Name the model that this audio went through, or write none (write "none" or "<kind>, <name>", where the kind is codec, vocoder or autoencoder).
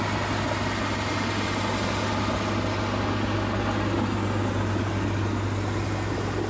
none